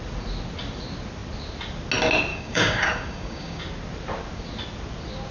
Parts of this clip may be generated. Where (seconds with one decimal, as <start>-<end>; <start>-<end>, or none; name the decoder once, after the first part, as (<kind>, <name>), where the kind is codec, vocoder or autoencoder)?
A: 2.3-3.6 (codec, DAC)